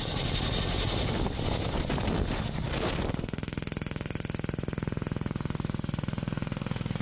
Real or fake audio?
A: real